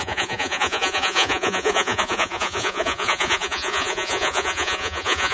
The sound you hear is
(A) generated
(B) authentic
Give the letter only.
A